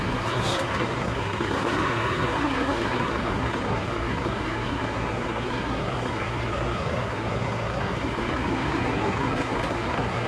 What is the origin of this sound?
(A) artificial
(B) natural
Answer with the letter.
A